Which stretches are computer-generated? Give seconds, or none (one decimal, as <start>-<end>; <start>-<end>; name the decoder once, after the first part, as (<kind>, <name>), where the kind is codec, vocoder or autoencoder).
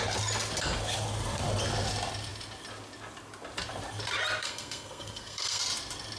4.4-5.6 (codec, SNAC)